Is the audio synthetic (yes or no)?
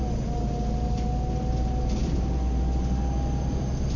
no